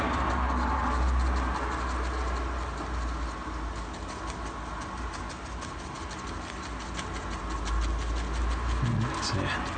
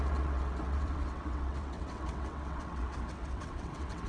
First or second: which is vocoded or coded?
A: second